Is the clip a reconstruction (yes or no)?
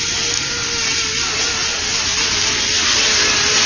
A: no